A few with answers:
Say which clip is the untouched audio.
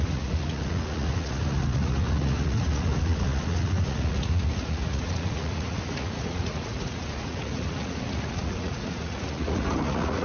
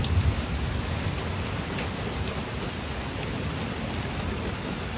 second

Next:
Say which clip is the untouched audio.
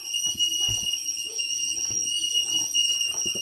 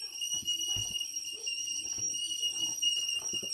second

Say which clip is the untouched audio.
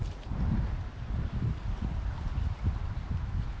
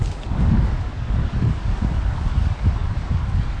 first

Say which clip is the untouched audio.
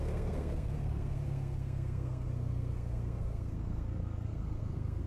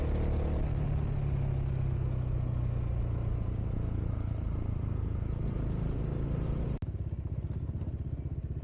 second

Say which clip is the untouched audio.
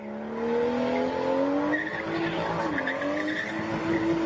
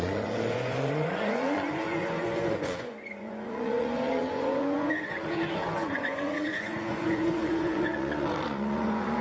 first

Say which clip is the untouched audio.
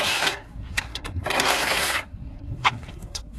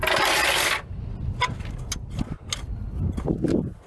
second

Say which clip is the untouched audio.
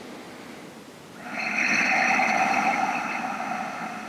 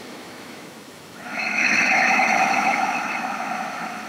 first